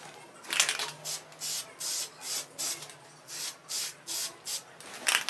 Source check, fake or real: real